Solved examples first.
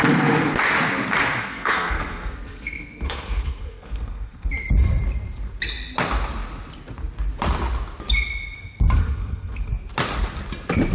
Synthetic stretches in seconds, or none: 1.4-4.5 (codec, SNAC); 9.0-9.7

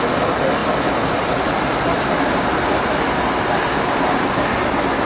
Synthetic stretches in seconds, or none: none

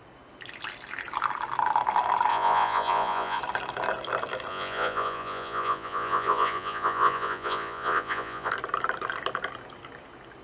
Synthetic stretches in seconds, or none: 2.3-3.4 (vocoder, Vocos); 4.5-8.5

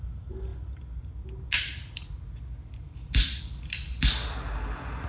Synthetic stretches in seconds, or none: none

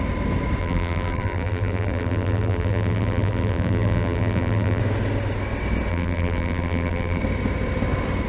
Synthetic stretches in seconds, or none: 0.6-4.8 (vocoder, BigVGAN v2); 5.9-7.2